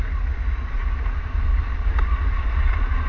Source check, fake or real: real